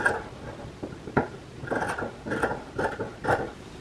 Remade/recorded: recorded